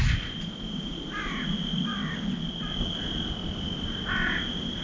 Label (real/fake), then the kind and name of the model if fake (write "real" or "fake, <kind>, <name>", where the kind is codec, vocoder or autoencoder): real